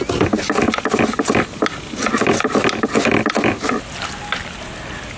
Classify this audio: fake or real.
real